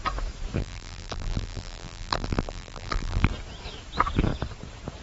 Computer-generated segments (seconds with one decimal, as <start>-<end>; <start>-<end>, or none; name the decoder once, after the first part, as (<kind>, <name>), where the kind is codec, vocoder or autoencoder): 0.6-3.3 (vocoder, BigVGAN v2)